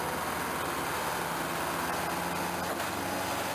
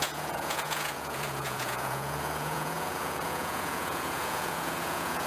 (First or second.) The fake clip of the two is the second